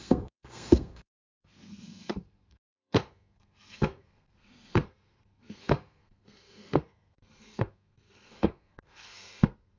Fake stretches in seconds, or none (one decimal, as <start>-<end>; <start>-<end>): 0.0-9.8